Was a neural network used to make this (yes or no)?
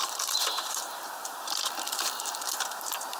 yes